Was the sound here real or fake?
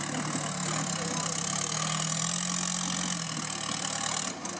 real